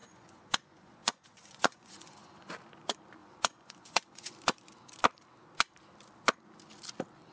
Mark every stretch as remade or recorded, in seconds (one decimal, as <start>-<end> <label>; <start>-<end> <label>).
0.0-2.5 remade; 2.5-3.2 recorded; 3.2-4.3 remade; 4.3-7.3 recorded

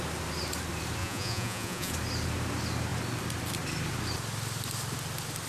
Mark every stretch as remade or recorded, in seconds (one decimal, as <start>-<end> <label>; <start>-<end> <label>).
0.0-1.0 recorded; 1.0-1.9 remade; 1.9-5.5 recorded

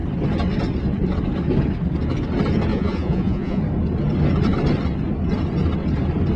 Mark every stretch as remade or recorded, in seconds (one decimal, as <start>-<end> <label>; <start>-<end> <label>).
0.0-2.7 recorded; 2.7-3.6 remade; 3.6-6.4 recorded

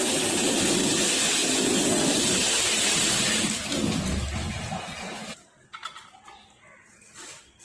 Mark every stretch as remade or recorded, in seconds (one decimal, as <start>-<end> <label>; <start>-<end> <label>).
0.0-7.6 recorded